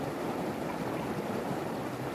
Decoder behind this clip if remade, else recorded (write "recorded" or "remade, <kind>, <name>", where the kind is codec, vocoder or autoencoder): recorded